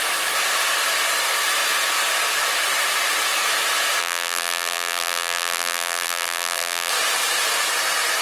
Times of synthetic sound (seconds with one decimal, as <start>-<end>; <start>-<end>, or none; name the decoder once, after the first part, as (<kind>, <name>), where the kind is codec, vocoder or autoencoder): 4.0-6.9 (vocoder, BigVGAN v2)